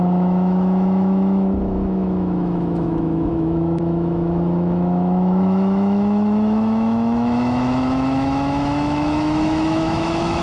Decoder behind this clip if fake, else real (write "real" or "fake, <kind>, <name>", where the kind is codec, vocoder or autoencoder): fake, autoencoder, DAC-VAE